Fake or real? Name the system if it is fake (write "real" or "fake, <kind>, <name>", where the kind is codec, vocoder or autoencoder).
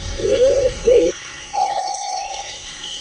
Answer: fake, codec, SNAC